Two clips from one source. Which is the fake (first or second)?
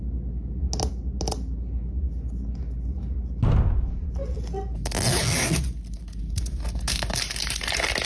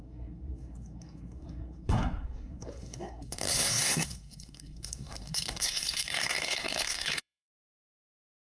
second